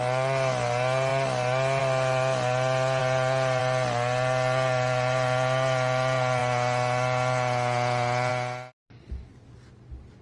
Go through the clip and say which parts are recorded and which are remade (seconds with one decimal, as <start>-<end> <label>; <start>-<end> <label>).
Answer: 0.0-10.2 recorded